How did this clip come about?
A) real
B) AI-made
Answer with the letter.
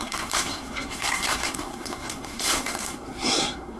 B